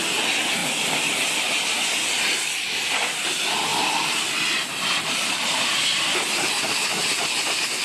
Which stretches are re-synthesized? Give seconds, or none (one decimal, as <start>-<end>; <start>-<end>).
none